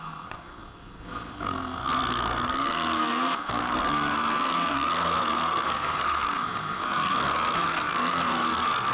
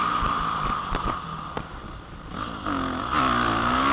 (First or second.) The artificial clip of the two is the first